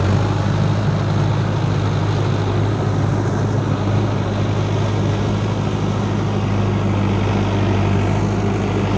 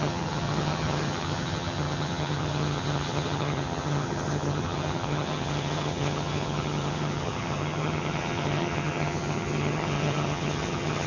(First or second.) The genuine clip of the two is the first